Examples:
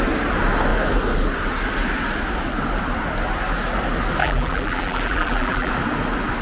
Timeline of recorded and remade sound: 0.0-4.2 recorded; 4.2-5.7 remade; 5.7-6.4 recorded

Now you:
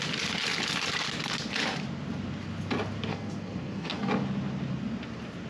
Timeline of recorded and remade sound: 0.0-3.1 recorded; 3.1-4.1 remade; 4.1-5.5 recorded